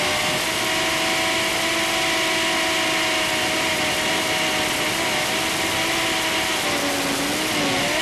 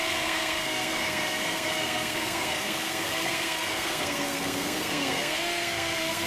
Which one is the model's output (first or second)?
second